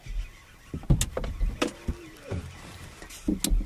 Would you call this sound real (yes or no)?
yes